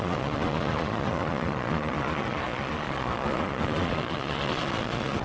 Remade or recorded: remade